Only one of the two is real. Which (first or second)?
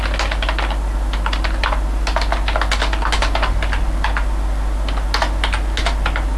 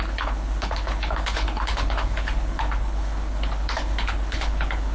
first